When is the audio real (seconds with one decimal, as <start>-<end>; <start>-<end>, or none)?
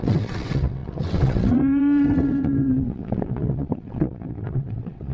none